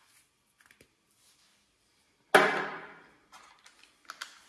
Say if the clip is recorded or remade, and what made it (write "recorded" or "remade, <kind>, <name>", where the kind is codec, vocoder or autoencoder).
recorded